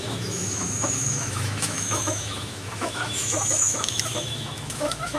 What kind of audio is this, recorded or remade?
remade